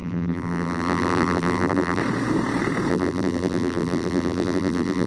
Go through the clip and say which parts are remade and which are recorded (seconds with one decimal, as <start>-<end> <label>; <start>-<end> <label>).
0.0-2.0 remade; 2.0-2.9 recorded; 2.9-5.1 remade